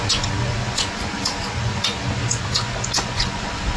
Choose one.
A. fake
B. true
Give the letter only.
A